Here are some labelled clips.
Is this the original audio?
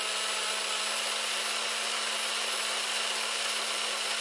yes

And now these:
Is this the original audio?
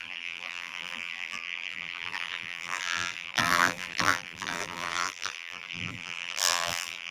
no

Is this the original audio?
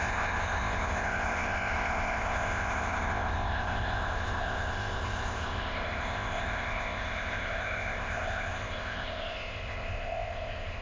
no